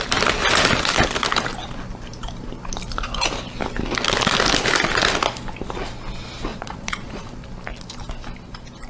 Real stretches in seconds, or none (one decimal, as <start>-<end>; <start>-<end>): 0.0-6.5; 7.3-8.9